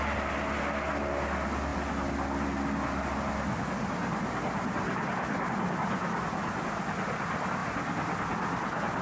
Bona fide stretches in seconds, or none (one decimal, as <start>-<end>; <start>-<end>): 0.0-9.0